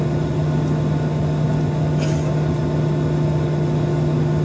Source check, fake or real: real